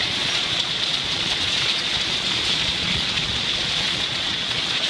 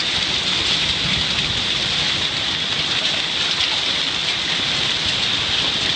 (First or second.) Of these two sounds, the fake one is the first